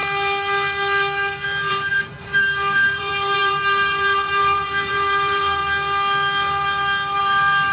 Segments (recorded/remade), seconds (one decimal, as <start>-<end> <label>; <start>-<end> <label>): 0.0-1.7 recorded; 1.7-5.6 remade; 5.6-7.2 recorded; 7.2-7.7 remade